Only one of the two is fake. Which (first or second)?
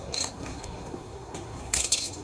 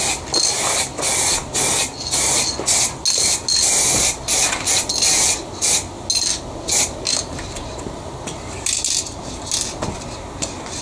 first